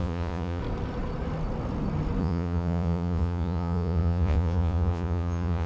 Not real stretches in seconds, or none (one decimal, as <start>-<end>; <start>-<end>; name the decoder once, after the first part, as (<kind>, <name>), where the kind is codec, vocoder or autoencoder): 0.0-0.6 (vocoder, Vocos); 2.2-5.7